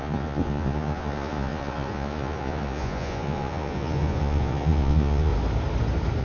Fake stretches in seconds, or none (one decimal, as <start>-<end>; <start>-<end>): 0.0-5.3